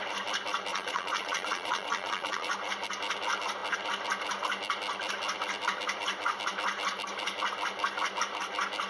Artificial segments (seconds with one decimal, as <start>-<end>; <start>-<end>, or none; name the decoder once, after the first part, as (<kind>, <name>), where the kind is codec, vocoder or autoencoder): 0.7-2.5 (vocoder, Vocos)